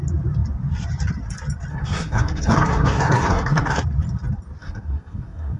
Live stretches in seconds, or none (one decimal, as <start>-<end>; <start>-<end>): 0.0-1.7; 3.8-4.6